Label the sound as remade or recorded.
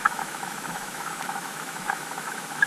remade